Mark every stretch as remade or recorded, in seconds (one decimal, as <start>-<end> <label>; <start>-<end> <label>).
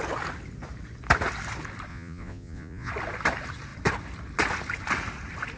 0.0-1.9 recorded; 1.9-2.9 remade; 2.9-5.6 recorded